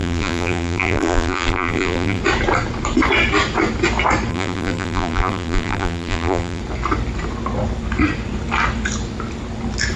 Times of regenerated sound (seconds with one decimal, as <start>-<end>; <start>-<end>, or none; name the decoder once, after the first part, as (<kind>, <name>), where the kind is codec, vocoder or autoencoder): 0.0-2.2 (vocoder, BigVGAN v2); 4.3-6.6